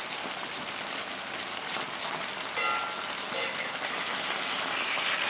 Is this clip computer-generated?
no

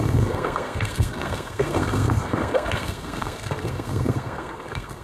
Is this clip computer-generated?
yes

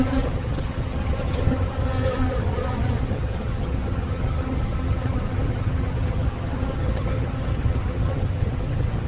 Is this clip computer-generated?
yes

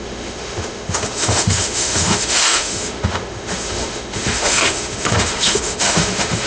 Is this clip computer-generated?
yes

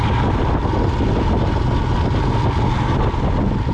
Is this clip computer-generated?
no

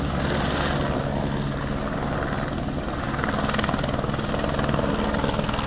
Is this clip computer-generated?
no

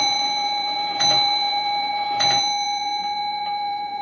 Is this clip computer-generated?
yes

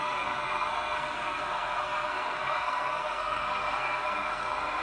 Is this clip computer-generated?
yes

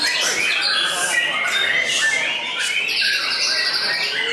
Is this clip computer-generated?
no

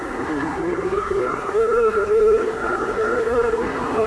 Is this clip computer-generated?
yes